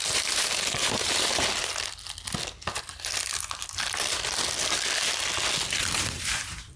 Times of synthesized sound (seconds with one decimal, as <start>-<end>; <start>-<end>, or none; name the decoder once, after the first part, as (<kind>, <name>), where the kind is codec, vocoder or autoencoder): 0.0-1.7 (vocoder, BigVGAN v2); 5.8-6.8